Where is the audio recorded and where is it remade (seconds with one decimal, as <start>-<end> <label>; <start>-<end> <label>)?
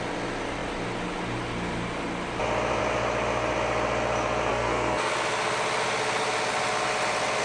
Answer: 0.0-4.5 recorded; 4.5-5.1 remade; 5.1-7.4 recorded